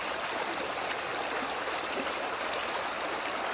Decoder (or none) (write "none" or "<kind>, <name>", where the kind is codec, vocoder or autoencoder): none